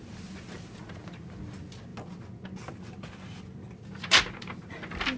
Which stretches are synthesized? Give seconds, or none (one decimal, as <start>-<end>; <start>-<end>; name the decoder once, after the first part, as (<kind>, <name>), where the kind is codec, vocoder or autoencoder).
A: none